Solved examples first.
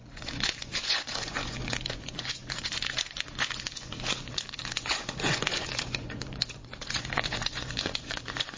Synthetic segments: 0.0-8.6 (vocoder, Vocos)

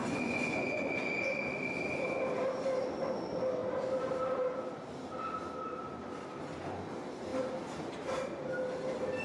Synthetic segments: 0.0-1.4 (vocoder, Vocos)